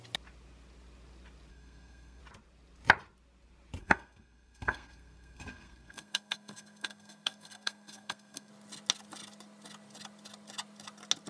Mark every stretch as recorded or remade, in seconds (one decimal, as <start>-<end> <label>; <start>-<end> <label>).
0.0-1.5 recorded; 1.5-2.2 remade; 2.2-3.8 recorded; 3.8-8.5 remade; 8.5-11.3 recorded